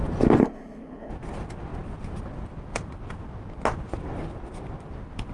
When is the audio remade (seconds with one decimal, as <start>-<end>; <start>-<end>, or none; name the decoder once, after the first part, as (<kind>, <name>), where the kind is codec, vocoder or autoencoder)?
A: 0.4-1.1 (codec, SNAC)